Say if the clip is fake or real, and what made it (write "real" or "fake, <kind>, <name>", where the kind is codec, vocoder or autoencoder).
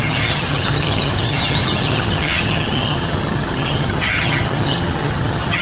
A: fake, vocoder, HiFi-GAN